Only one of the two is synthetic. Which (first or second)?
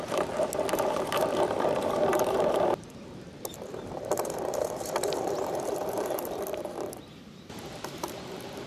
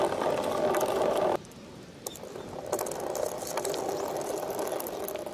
first